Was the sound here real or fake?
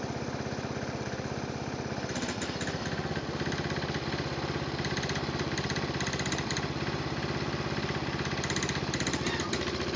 real